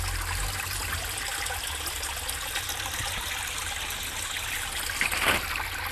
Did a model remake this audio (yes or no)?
no